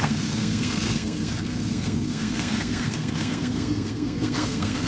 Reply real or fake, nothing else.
fake